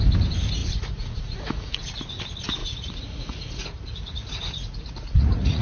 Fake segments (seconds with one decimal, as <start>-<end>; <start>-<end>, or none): 0.6-1.8; 2.6-5.6